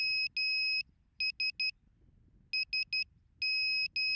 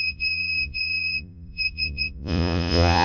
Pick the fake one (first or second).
second